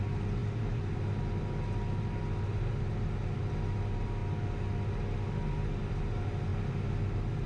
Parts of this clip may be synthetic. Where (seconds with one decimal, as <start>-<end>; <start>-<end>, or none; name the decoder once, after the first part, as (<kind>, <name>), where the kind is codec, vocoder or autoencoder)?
none